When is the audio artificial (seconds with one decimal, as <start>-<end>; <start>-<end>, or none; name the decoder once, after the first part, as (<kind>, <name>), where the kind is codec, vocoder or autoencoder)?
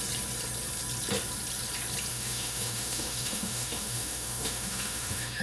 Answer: 2.1-5.4 (autoencoder, DAC-VAE)